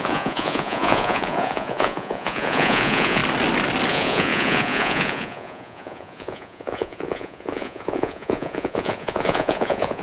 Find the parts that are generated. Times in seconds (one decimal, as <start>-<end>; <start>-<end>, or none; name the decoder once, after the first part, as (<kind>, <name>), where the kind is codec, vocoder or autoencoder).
0.0-3.2 (vocoder, Vocos); 3.9-10.0